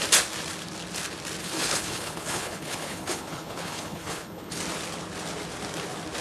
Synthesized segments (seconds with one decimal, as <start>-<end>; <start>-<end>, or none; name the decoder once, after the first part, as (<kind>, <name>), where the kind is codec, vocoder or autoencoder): 1.4-4.6 (codec, HILCodec)